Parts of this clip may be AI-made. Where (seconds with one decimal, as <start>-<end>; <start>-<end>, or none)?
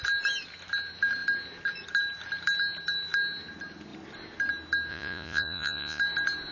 4.9-6.0